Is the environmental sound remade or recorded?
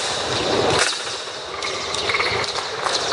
recorded